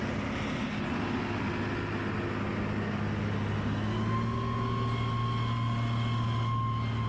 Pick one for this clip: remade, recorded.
recorded